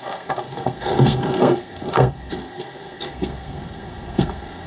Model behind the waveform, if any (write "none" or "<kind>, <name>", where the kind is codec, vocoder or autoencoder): codec, SNAC